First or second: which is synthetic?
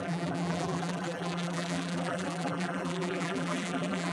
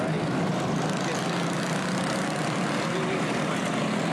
first